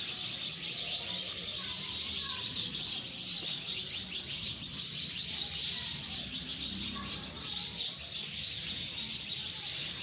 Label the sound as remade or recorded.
remade